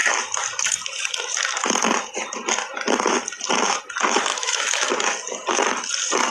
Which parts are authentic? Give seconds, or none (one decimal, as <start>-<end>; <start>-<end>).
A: 0.0-4.3; 4.9-6.3